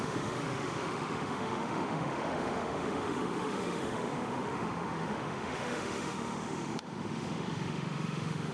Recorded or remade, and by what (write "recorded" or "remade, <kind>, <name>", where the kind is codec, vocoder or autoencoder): remade, autoencoder, DAC-VAE